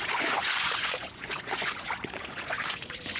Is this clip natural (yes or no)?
no